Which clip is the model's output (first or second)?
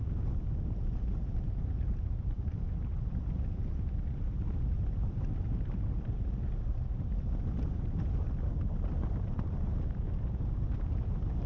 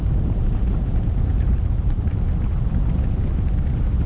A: first